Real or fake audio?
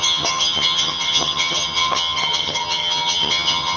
fake